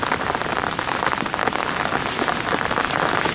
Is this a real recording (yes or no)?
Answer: yes